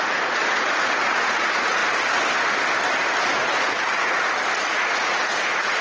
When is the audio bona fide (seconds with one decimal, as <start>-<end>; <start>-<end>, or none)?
1.8-3.3